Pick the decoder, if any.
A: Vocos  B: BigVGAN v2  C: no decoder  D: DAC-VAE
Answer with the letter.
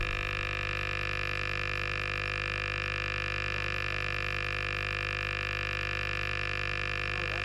C